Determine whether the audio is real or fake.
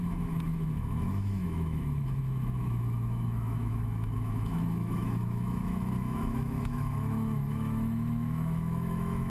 fake